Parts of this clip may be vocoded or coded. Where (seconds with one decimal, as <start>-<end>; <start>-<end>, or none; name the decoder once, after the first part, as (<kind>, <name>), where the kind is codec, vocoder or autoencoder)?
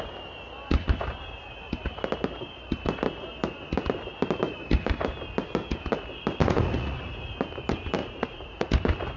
6.4-7.3 (vocoder, Vocos); 8.0-8.7